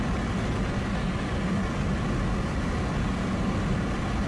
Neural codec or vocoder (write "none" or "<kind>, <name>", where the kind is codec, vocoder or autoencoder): none